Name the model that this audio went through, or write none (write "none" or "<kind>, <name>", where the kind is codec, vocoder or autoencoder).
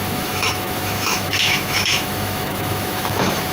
autoencoder, DAC-VAE